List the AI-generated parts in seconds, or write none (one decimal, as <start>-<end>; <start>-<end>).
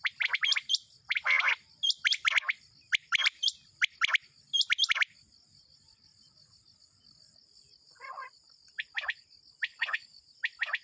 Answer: 9.7-10.2